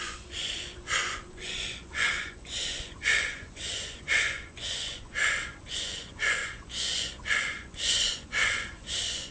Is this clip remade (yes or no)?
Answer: yes